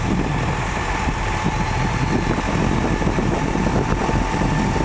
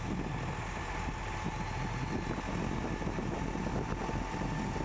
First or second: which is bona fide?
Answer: second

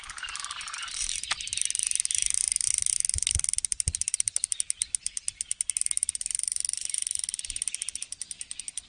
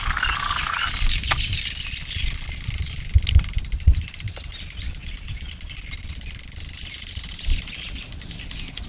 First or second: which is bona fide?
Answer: second